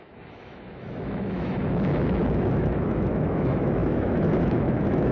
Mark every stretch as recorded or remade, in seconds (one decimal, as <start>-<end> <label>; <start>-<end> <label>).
0.0-5.1 remade